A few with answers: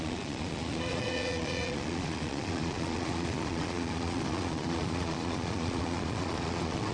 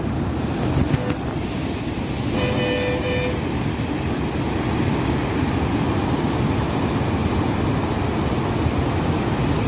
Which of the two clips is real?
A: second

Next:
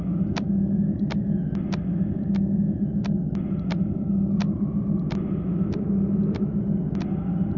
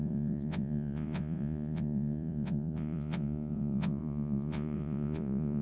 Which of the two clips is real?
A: first